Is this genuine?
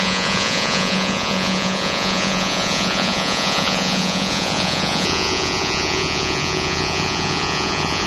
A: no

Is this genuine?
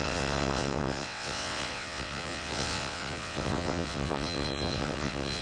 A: no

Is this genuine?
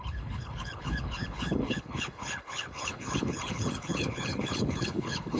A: no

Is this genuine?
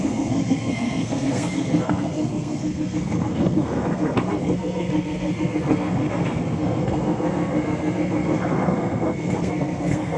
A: no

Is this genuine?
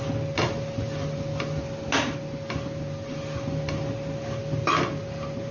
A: yes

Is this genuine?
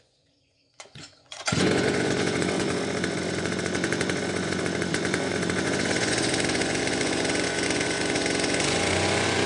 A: no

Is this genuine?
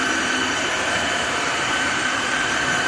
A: no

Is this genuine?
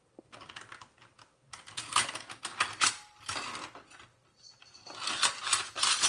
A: yes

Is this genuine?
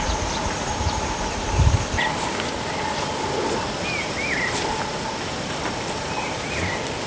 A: yes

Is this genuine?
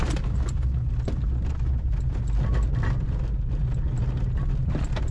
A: yes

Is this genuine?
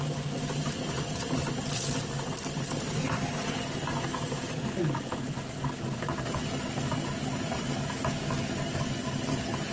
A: yes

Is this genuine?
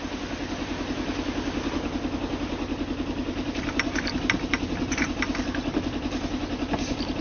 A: yes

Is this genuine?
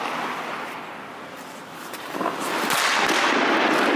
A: yes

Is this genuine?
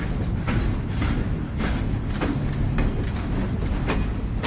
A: yes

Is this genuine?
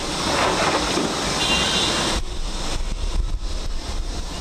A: no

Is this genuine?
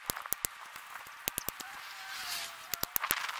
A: yes